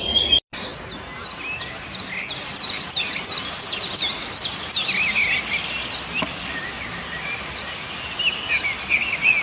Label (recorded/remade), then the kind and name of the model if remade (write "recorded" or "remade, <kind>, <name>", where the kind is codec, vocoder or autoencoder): recorded